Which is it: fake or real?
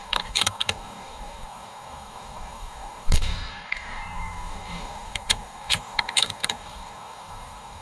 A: fake